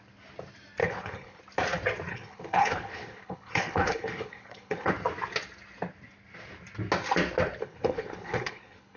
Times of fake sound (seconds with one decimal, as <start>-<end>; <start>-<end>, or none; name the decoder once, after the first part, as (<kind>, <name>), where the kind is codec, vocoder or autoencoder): 0.8-1.4 (codec, HILCodec); 2.1-4.9; 7.6-9.0